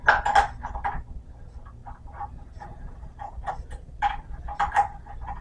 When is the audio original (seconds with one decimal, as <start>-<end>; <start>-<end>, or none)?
0.0-1.8; 5.0-5.4